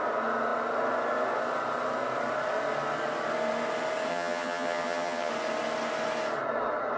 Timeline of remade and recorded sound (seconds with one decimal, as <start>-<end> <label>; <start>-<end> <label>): 0.0-4.1 recorded; 4.1-5.3 remade; 5.3-7.0 recorded